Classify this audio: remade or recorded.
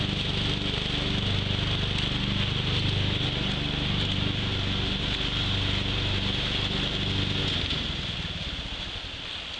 recorded